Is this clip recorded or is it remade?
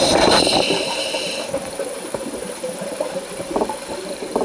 remade